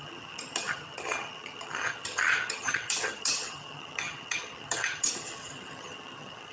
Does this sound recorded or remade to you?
remade